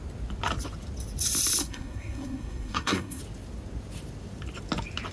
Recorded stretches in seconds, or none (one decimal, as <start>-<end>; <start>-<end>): 0.0-1.6; 3.2-5.1